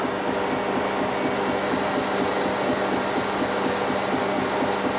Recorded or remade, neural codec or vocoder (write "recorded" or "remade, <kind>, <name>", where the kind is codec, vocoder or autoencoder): recorded